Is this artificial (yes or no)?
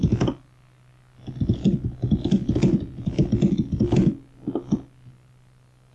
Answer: no